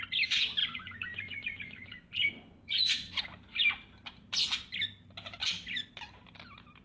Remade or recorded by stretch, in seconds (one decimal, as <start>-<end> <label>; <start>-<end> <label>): 0.0-0.6 recorded; 0.6-3.2 remade; 3.2-6.8 recorded